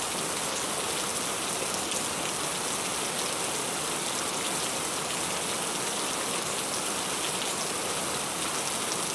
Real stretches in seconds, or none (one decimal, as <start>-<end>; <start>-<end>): 0.0-9.1